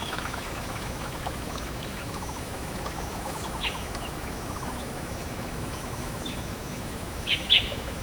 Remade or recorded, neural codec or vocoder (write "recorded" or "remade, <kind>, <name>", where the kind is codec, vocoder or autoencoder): remade, autoencoder, DAC-VAE